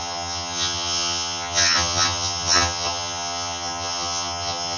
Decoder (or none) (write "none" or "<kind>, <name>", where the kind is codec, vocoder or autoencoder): vocoder, HiFi-GAN